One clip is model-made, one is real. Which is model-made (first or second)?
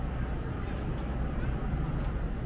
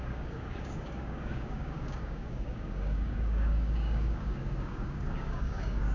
second